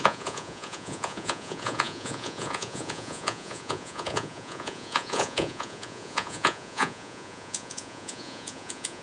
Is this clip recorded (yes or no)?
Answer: no